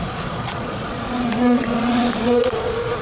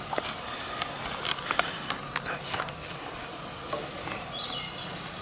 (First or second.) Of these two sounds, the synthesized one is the first